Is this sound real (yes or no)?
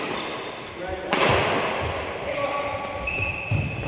yes